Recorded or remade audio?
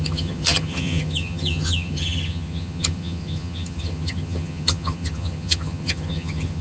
remade